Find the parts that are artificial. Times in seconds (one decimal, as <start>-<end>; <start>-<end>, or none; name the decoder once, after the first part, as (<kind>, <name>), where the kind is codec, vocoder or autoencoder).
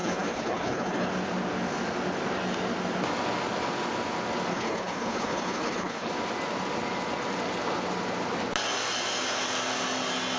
0.0-1.1 (codec, HILCodec); 4.5-6.1